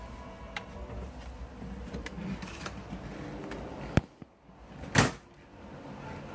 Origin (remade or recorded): recorded